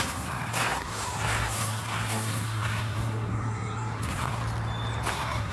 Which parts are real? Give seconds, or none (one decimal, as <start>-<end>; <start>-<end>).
4.4-5.1